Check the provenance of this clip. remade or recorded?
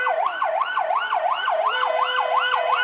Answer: recorded